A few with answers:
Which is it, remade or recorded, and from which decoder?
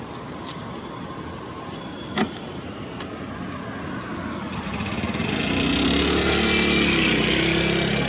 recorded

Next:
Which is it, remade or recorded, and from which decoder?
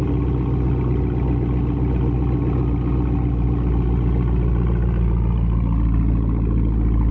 recorded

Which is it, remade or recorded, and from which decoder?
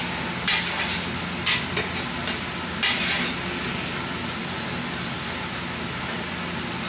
recorded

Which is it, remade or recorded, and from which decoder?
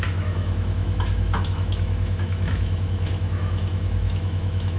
remade, autoencoder, DAC-VAE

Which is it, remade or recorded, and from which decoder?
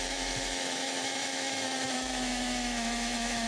remade, autoencoder, DAC-VAE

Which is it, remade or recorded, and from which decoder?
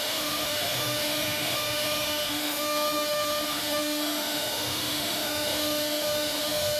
remade, autoencoder, DAC-VAE